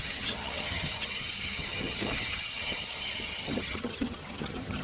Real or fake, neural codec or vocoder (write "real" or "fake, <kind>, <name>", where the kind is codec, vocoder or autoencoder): fake, vocoder, HiFi-GAN